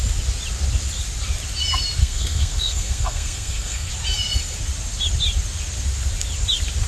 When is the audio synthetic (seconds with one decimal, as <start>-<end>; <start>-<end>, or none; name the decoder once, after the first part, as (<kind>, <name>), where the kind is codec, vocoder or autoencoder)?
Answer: 2.0-3.9 (codec, SNAC)